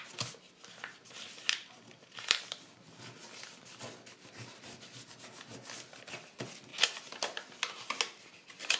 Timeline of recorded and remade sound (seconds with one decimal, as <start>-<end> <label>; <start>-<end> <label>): 0.0-8.8 recorded